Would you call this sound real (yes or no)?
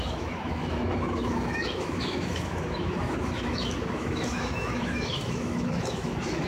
no